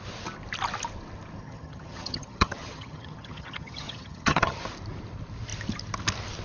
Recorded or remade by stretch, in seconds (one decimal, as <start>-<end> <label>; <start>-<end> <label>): 0.0-1.4 recorded; 1.4-4.6 remade; 4.6-6.4 recorded